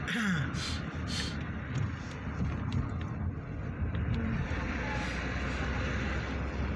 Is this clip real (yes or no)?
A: yes